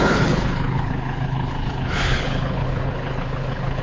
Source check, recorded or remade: remade